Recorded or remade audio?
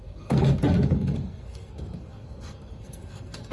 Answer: remade